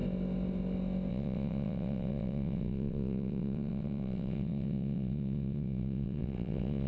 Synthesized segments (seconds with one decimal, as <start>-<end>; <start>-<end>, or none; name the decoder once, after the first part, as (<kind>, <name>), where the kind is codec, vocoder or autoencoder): 1.1-6.9 (vocoder, WaveNeXt)